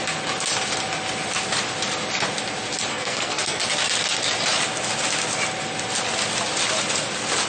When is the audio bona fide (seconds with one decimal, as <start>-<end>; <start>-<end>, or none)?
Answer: 0.0-2.9; 3.6-7.5